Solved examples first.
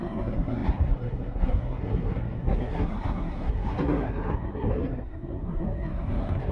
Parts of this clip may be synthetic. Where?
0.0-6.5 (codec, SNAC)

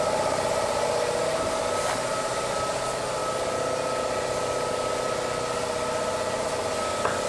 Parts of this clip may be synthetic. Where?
none

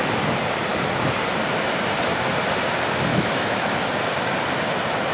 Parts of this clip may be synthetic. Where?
3.1-3.7 (autoencoder, DAC-VAE)